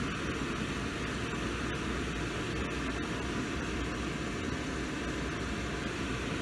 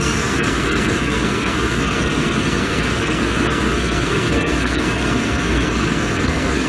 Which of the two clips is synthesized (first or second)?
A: second